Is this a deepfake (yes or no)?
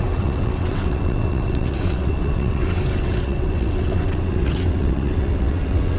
yes